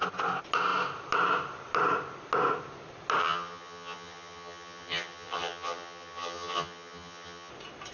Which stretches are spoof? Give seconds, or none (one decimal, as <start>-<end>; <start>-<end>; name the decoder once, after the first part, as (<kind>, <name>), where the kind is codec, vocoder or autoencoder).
3.2-7.5 (vocoder, HiFi-GAN)